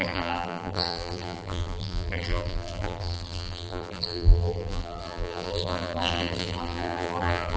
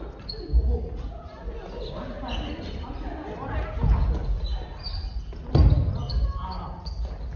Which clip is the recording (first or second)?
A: second